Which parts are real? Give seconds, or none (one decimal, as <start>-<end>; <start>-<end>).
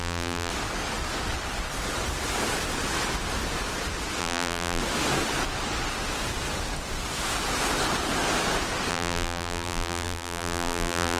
0.5-4.2; 4.8-8.9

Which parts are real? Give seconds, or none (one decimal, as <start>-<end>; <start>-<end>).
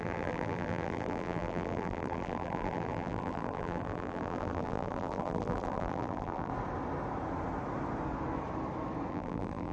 6.5-9.1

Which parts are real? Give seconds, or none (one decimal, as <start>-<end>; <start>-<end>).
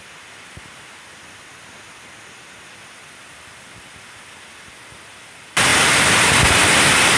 0.0-5.7; 6.4-7.2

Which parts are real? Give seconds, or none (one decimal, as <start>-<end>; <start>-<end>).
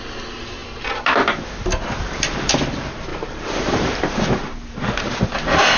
0.0-3.1; 5.1-5.8